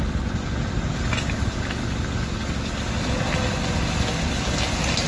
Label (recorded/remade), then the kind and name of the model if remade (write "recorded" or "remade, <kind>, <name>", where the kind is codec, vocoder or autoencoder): recorded